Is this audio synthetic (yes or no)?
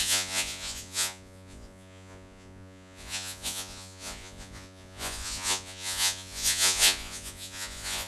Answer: yes